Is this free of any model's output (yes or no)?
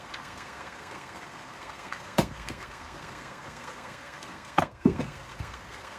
no